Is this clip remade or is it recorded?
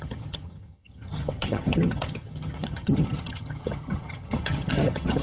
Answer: remade